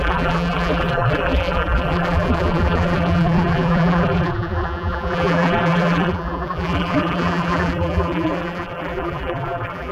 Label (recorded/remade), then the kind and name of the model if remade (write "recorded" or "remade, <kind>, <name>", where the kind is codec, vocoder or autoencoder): remade, vocoder, BigVGAN v2